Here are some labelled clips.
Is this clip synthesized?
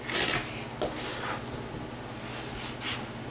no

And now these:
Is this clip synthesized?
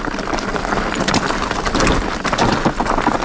no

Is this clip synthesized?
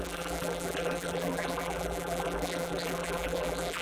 yes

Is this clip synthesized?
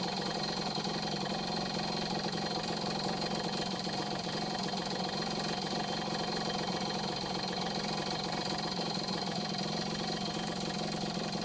yes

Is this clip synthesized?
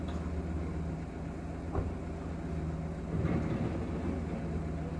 no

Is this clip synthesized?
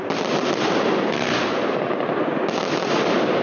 no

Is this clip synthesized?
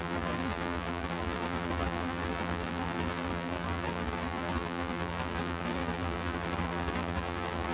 yes